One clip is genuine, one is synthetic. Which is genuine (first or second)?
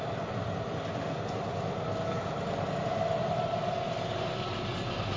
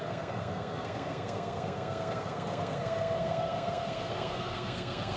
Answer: first